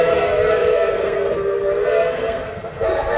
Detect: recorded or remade remade